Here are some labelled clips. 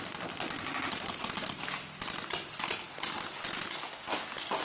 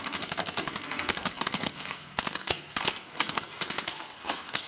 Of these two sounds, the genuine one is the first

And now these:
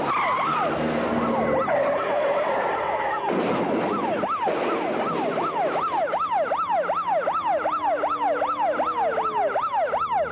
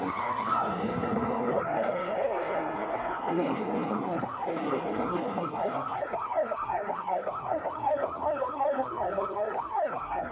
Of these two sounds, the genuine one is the first